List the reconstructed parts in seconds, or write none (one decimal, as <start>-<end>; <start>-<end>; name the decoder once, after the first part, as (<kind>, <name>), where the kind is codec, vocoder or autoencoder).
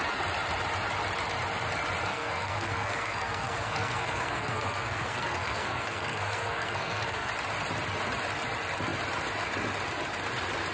2.1-7.3 (codec, SNAC)